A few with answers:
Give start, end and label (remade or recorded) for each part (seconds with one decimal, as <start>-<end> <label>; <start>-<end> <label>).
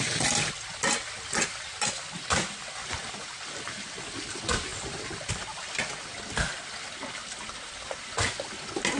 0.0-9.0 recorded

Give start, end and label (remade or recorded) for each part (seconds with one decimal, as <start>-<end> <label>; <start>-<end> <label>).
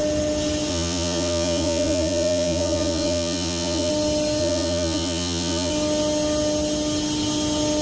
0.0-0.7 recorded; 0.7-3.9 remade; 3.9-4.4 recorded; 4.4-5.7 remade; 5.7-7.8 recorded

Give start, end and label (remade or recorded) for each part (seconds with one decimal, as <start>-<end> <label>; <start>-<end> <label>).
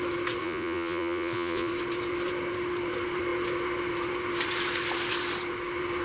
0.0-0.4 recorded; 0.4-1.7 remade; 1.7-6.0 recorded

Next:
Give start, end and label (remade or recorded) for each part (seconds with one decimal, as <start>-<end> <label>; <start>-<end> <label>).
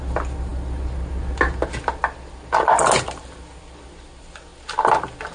0.0-5.3 recorded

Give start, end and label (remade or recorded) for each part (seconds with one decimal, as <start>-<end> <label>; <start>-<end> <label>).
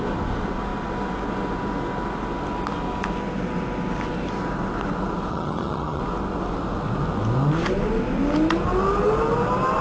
0.0-5.3 recorded; 5.3-6.0 remade; 6.0-9.8 recorded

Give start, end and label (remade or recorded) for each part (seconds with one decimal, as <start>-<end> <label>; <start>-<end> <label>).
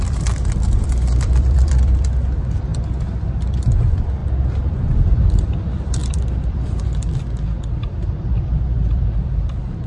0.0-2.7 remade; 2.7-3.8 recorded; 3.8-9.9 remade